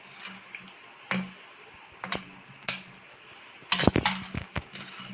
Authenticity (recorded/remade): recorded